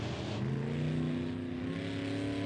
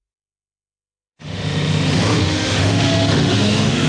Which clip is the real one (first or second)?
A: first